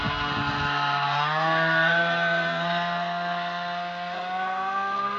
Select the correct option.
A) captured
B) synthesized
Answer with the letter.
B